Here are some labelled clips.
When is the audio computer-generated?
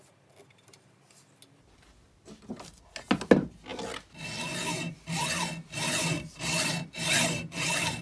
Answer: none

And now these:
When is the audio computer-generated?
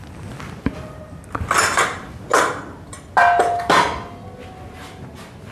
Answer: 2.3-3.6 (vocoder, BigVGAN v2)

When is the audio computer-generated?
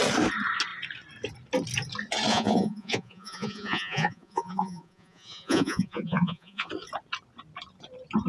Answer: 2.3-6.7 (vocoder, Vocos)